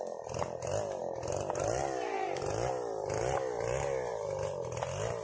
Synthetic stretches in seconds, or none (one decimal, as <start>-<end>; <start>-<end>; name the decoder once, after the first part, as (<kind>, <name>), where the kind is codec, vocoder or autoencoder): none